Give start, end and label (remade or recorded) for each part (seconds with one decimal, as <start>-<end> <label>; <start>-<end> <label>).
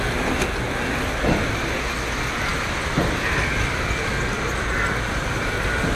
0.0-6.0 recorded